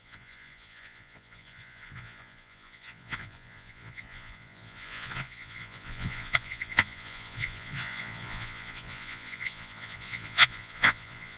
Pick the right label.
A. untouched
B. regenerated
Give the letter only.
B